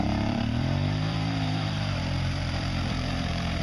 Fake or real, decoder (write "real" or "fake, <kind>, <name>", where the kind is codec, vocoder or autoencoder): fake, vocoder, BigVGAN v2